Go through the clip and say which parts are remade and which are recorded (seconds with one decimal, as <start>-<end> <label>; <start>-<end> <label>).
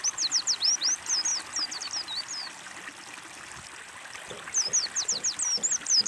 0.0-6.1 recorded